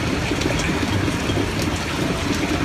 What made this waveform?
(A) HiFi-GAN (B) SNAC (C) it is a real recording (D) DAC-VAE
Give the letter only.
C